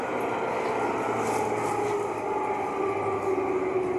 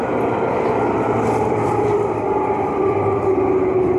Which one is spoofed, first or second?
second